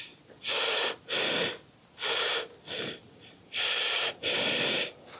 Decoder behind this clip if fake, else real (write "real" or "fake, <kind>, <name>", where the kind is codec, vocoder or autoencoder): fake, vocoder, BigVGAN v2